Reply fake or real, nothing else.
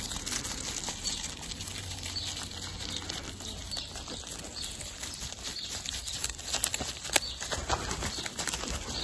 real